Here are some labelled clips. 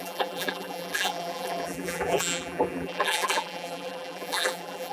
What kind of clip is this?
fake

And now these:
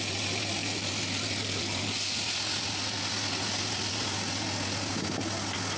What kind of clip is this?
real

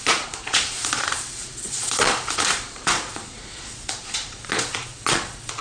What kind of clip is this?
fake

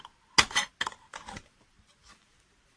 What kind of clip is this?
real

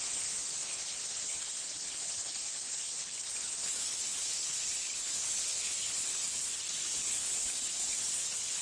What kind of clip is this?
fake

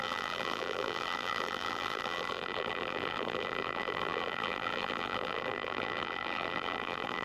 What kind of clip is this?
fake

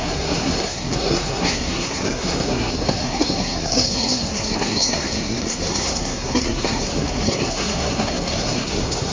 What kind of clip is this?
fake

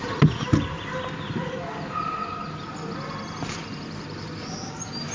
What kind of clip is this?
real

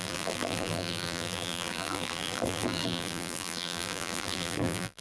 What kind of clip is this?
fake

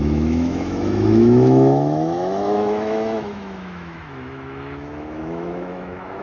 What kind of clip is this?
fake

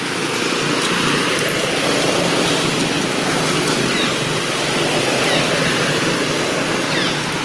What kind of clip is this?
real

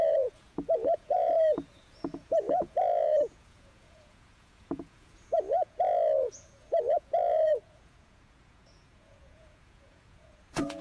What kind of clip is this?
fake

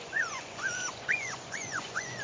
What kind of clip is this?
fake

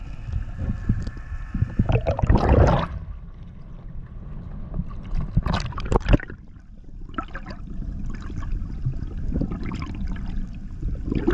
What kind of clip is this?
real